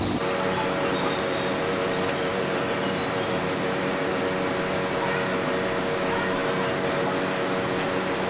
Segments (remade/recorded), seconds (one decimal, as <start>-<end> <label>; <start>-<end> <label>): 0.0-0.9 recorded; 0.9-4.2 remade; 4.2-8.3 recorded